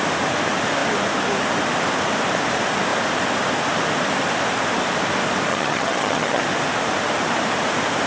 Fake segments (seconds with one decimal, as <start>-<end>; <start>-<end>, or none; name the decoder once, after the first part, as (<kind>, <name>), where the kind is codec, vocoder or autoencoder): 5.5-6.4 (vocoder, HiFi-GAN)